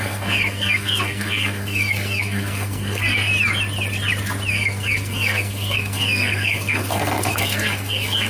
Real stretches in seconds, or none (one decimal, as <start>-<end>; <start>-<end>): 3.3-4.5